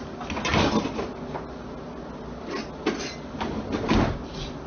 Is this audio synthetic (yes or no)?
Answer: no